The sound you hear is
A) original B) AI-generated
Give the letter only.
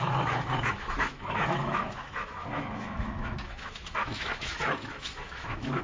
B